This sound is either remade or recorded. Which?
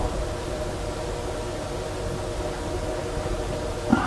recorded